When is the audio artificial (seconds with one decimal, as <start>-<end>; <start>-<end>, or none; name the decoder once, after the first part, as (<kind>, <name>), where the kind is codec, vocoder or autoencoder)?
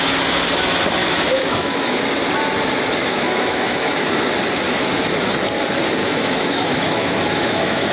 1.0-2.0 (autoencoder, DAC-VAE); 3.0-4.1; 6.0-7.9